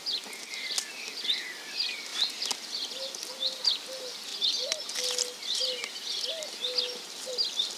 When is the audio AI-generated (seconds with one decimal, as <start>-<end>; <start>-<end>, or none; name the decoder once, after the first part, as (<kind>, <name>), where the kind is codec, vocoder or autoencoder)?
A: 0.0-4.3 (vocoder, BigVGAN v2); 7.3-7.8